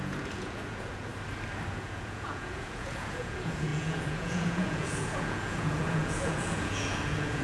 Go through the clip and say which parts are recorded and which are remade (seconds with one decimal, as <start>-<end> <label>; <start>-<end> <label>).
0.0-1.1 remade; 1.1-1.7 recorded; 1.7-7.4 remade